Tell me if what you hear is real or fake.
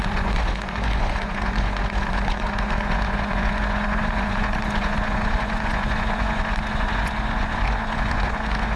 fake